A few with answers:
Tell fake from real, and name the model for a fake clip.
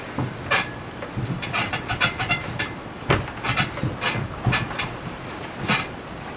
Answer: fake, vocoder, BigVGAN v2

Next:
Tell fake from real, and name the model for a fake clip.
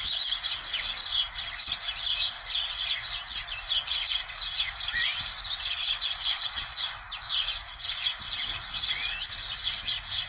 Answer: real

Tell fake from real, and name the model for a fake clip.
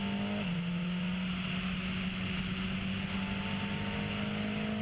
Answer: real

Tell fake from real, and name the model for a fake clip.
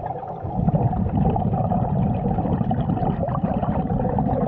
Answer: real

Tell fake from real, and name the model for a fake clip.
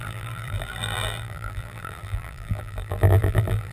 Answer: fake, vocoder, BigVGAN v2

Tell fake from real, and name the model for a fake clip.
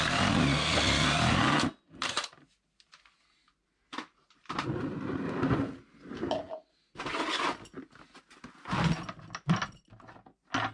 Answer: real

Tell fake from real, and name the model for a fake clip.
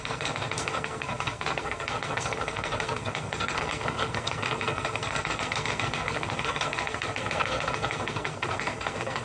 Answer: fake, codec, SNAC